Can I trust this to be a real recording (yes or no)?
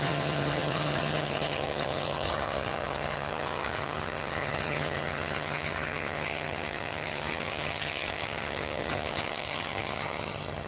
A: no